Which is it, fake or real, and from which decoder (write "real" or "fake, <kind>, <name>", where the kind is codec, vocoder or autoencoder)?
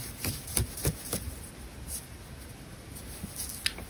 real